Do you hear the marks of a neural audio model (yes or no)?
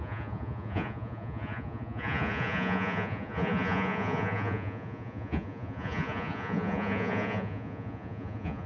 yes